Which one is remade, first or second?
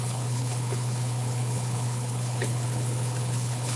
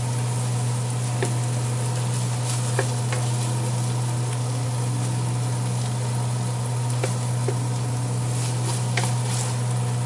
first